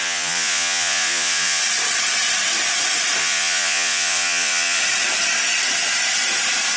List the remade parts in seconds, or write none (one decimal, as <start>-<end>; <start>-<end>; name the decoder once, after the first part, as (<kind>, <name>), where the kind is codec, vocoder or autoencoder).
0.0-1.6 (vocoder, Vocos); 3.2-4.8